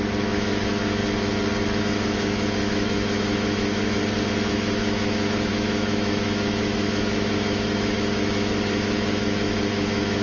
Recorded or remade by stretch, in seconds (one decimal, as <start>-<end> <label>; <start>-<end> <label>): 0.0-1.0 remade; 1.0-1.8 recorded; 1.8-4.0 remade; 4.0-4.5 recorded; 4.5-10.2 remade